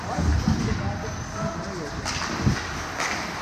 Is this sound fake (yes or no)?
no